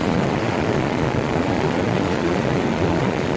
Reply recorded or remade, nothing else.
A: remade